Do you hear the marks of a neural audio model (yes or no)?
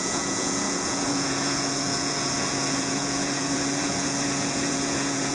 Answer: yes